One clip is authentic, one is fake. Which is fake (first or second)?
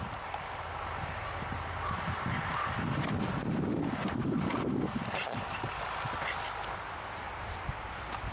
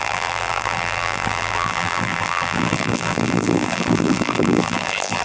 second